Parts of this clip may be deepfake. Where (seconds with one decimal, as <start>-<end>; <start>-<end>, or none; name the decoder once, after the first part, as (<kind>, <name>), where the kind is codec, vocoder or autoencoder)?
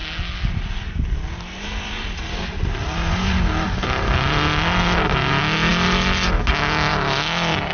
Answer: none